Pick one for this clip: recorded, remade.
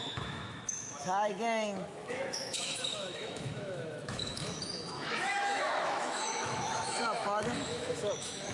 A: remade